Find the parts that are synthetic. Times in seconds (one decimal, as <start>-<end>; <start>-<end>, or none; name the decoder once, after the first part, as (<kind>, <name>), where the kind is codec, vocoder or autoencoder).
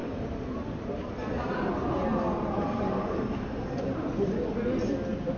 none